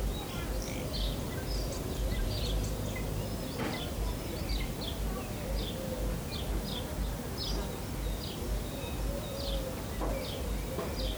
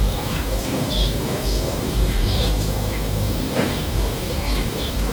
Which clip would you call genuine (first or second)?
first